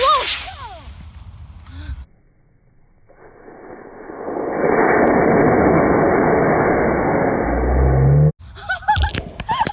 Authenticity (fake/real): real